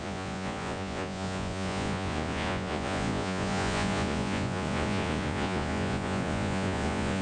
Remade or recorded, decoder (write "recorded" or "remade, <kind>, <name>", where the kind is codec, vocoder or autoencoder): remade, vocoder, Vocos